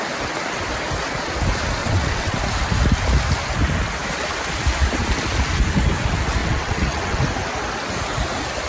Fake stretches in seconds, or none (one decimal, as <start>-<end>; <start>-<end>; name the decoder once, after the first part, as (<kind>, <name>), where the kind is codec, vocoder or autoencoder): 1.8-2.4 (vocoder, WaveNeXt); 6.4-7.2